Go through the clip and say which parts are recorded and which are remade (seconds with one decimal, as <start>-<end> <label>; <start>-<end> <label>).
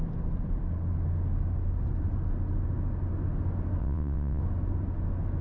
0.0-3.8 recorded; 3.8-4.4 remade; 4.4-5.4 recorded